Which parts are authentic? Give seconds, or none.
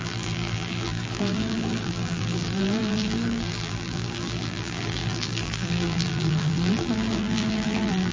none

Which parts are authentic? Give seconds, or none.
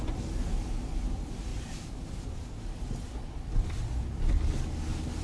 0.0-5.2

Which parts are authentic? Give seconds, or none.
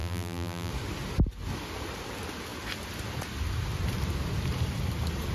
0.7-5.3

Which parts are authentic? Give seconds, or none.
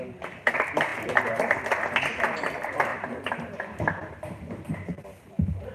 0.0-0.9; 1.6-2.9; 5.0-5.7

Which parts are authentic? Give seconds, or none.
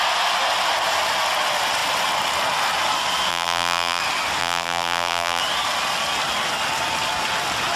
0.0-3.3; 4.0-4.4; 5.4-7.8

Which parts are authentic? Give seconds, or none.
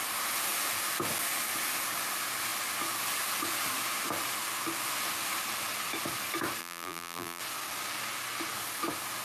0.0-6.6; 7.4-9.2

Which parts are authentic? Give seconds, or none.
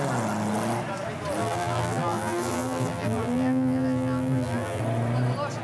0.0-1.4; 4.8-5.6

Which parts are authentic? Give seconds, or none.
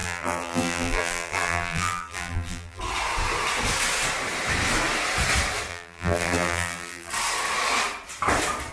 2.8-5.7; 7.1-8.7